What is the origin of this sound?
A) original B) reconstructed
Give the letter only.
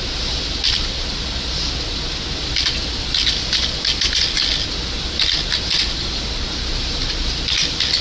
A